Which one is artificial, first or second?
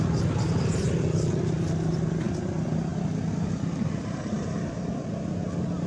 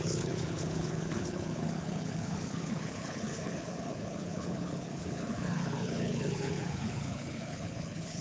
second